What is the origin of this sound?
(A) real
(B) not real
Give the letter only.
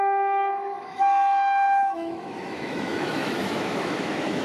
B